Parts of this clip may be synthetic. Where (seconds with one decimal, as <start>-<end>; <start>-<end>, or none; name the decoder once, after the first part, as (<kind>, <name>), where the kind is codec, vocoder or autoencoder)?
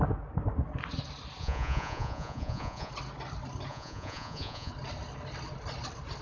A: 1.4-2.9 (vocoder, Vocos); 3.7-4.7